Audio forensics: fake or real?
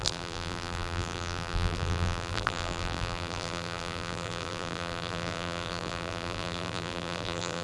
fake